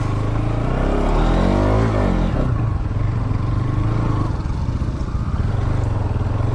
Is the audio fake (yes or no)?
no